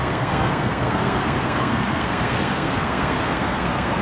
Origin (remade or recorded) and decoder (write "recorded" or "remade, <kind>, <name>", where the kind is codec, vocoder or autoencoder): remade, codec, SNAC